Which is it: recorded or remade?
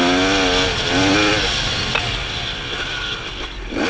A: recorded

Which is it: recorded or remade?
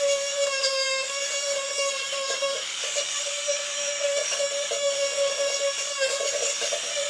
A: remade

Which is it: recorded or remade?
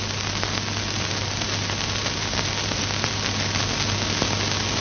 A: recorded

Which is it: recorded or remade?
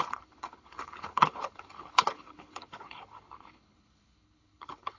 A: remade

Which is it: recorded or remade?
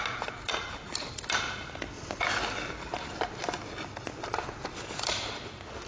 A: recorded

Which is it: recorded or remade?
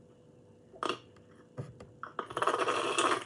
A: recorded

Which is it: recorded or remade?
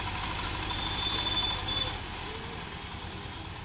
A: recorded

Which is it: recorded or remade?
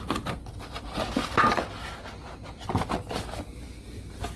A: recorded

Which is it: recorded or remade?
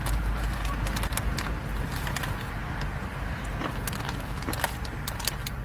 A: recorded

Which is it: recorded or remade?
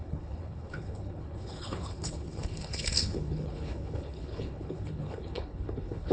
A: remade